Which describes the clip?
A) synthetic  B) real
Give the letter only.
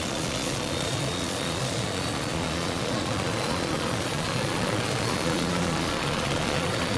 A